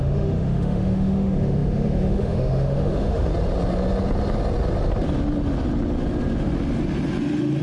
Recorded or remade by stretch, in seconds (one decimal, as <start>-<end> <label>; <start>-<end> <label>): 0.0-3.3 remade; 3.3-7.6 recorded